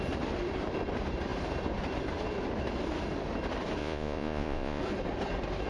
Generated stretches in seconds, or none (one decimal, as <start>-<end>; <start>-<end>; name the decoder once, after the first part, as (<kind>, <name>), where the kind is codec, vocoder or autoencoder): 3.8-4.8 (vocoder, Vocos)